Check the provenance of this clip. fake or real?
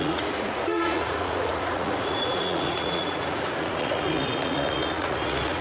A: fake